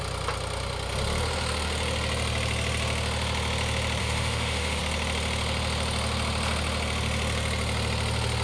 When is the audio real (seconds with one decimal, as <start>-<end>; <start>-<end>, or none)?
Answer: 0.0-4.0; 4.8-8.4